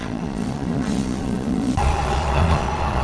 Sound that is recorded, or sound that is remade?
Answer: remade